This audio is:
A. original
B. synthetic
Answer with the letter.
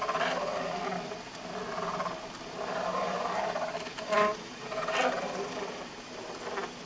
A